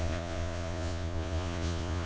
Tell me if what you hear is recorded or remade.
remade